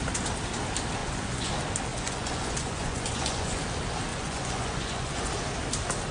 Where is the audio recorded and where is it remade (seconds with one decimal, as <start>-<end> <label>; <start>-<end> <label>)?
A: 0.0-1.0 recorded; 1.0-1.5 remade; 1.5-1.9 recorded; 1.9-3.6 remade; 3.6-4.1 recorded; 4.1-5.3 remade; 5.3-6.1 recorded